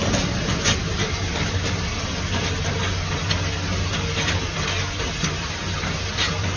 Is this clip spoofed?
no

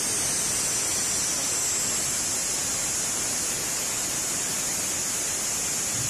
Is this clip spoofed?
no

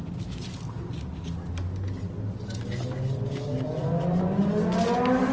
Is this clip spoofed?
no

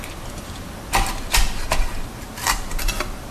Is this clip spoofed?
no